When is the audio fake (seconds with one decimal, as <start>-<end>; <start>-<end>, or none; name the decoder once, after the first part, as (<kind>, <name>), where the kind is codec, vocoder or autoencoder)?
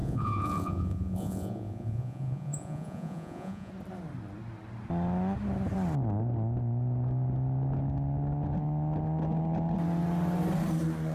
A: 0.0-3.7 (vocoder, Vocos)